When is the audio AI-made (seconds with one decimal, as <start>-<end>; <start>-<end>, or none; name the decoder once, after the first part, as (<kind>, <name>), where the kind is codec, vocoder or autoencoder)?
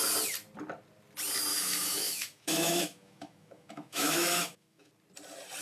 1.5-4.9 (autoencoder, DAC-VAE)